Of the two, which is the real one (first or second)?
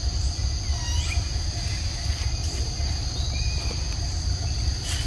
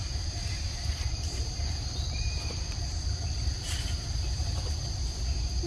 first